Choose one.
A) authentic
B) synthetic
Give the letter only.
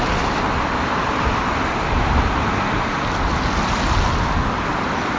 A